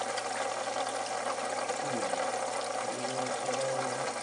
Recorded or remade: recorded